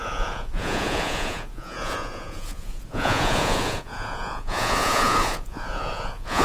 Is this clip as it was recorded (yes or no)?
no